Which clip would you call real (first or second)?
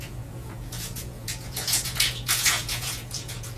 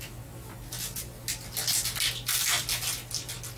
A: second